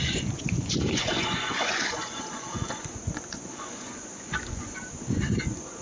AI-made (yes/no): yes